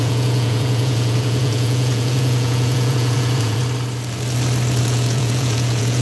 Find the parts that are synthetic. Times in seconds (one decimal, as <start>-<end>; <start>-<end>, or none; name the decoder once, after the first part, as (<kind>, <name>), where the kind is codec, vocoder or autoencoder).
0.0-3.6 (vocoder, Vocos); 4.8-6.0